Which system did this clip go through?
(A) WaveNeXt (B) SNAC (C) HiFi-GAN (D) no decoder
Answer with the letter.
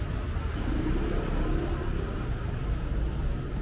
D